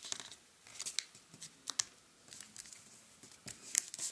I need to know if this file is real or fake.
real